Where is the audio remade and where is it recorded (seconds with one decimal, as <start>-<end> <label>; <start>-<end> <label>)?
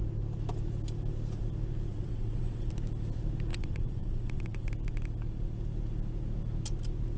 0.0-1.9 recorded; 1.9-2.7 remade; 2.7-3.5 recorded; 3.5-4.7 remade; 4.7-7.2 recorded